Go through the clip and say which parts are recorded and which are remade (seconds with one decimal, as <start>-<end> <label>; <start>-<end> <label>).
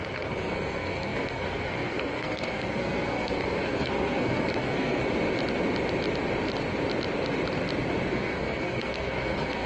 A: 0.0-5.0 remade; 5.0-8.1 recorded; 8.1-9.7 remade